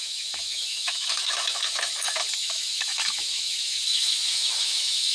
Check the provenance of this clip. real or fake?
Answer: fake